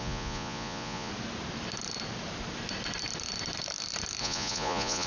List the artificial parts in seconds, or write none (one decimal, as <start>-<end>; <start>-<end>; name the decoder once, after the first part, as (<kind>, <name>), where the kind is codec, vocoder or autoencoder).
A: 0.0-1.1 (vocoder, Vocos); 4.2-5.1